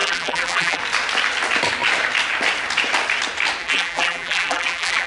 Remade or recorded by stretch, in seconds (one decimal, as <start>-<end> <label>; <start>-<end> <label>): 0.0-0.8 remade; 0.8-3.6 recorded; 3.6-5.1 remade